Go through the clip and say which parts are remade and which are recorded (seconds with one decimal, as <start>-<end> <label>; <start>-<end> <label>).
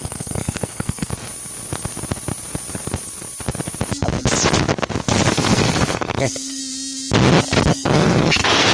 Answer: 0.0-1.1 remade; 1.1-5.3 recorded; 5.3-6.6 remade; 6.6-7.7 recorded; 7.7-8.7 remade